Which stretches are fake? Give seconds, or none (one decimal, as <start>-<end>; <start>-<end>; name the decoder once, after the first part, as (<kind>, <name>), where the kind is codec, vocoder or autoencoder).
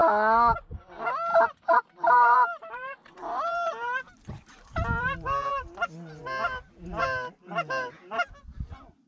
1.3-5.5 (vocoder, BigVGAN v2)